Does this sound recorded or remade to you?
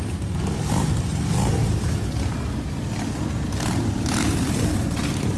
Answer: remade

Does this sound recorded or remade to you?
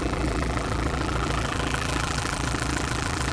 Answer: remade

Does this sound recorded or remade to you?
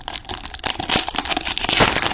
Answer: recorded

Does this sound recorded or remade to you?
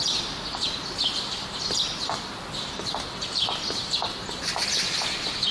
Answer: remade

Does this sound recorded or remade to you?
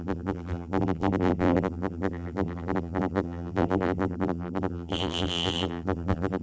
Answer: remade